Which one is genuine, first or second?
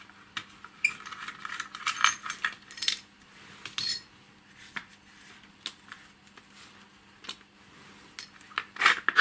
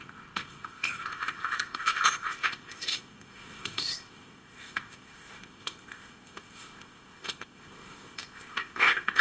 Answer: first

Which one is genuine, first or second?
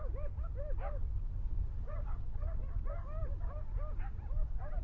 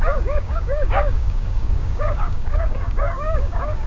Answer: first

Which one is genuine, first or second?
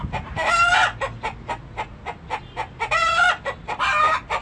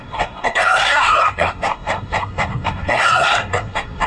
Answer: first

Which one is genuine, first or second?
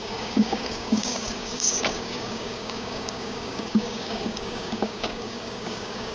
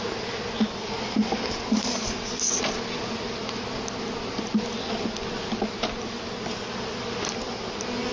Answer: second